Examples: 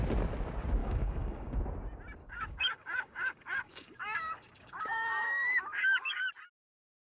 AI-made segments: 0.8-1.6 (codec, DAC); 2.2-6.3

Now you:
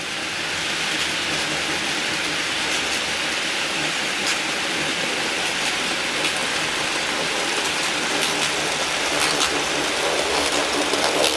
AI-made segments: none